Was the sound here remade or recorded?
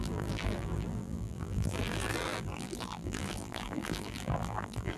remade